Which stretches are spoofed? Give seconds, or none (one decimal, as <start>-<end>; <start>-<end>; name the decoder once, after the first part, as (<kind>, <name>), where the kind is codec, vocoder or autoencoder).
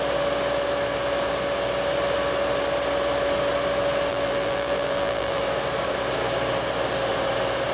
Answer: 4.1-5.4 (vocoder, BigVGAN v2)